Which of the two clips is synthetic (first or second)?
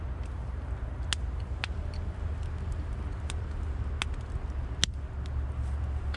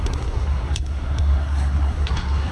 second